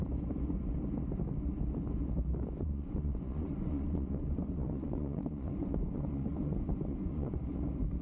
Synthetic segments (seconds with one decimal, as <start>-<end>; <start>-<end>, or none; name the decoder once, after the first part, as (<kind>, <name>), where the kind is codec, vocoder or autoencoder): 2.6-7.4 (vocoder, Vocos)